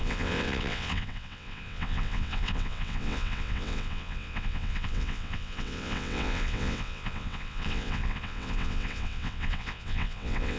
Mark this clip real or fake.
fake